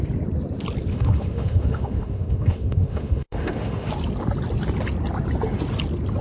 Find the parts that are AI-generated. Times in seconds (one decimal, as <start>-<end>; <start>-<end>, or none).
0.9-3.9